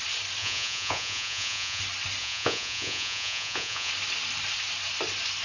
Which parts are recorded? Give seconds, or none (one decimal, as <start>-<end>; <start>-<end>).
0.0-0.4; 1.8-2.2; 3.9-5.4